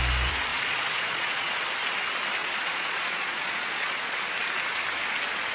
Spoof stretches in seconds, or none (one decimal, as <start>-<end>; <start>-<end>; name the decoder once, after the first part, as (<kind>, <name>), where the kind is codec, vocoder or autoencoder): 0.5-1.7 (vocoder, Vocos); 2.4-4.2